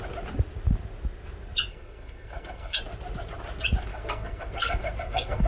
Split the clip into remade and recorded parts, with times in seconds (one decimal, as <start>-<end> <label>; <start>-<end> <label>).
0.0-1.7 recorded; 1.7-2.8 remade; 2.8-3.9 recorded; 3.9-5.5 remade

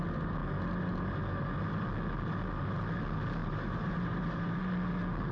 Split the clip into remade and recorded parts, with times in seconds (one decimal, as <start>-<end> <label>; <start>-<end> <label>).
0.0-3.4 recorded; 3.4-4.6 remade; 4.6-5.3 recorded

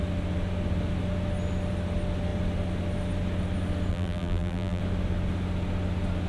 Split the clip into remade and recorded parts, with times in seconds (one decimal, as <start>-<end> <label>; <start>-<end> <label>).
0.0-3.9 recorded; 3.9-4.8 remade; 4.8-6.3 recorded

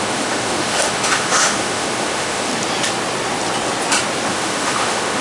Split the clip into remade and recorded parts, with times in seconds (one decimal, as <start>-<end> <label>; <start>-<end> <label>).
0.0-2.5 remade; 2.5-4.3 recorded; 4.3-5.2 remade